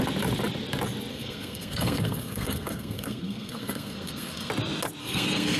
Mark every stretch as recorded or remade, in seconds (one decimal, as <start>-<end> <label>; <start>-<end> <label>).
0.0-1.1 recorded; 1.1-4.5 remade; 4.5-5.0 recorded; 5.0-5.6 remade